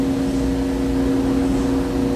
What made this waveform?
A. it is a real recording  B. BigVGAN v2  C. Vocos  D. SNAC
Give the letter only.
A